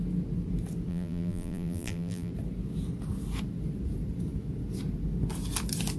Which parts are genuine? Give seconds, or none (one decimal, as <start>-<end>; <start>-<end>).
0.0-0.9; 2.3-6.0